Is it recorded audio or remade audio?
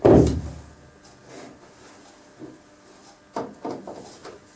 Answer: remade